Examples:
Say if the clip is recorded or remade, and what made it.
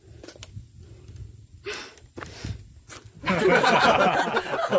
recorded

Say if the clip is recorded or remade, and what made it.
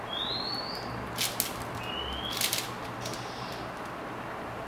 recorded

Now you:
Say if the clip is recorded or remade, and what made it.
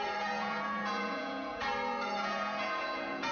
remade, vocoder, Vocos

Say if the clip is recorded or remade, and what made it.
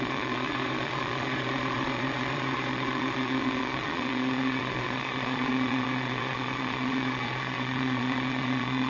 remade, vocoder, Vocos